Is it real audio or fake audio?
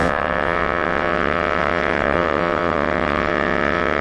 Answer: fake